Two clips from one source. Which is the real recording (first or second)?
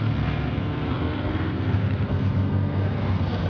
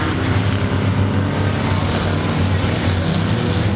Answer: second